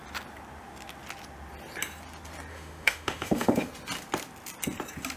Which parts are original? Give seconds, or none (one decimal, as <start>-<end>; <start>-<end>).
0.0-2.5; 3.7-5.2